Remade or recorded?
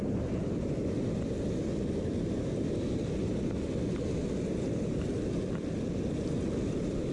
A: recorded